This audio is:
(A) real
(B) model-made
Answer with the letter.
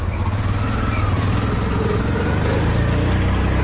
A